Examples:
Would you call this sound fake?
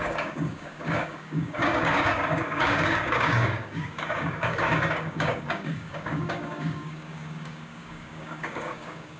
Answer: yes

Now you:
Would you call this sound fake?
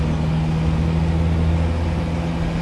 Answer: no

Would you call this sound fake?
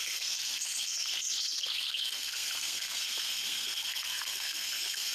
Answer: yes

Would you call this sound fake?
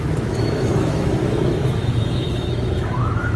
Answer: yes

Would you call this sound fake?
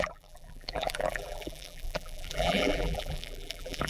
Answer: yes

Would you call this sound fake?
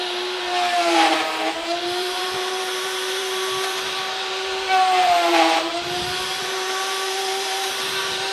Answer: yes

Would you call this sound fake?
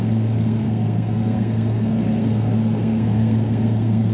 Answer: yes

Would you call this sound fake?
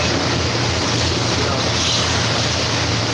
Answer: no